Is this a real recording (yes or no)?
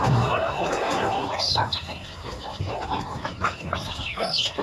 no